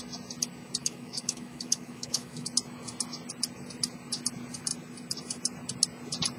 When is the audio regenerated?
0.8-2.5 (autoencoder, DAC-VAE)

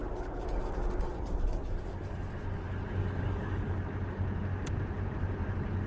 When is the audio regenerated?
0.0-2.3 (codec, DAC); 3.0-3.8